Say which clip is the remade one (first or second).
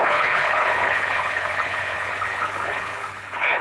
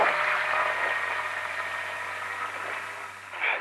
first